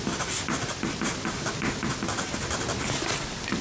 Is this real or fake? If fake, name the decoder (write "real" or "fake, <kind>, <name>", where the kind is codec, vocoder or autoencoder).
real